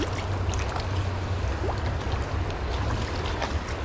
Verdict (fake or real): real